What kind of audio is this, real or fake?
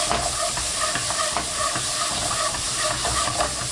real